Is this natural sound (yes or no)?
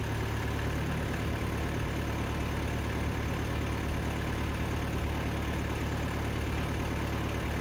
yes